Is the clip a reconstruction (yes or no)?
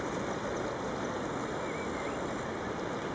no